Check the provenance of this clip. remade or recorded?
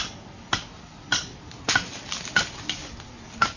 recorded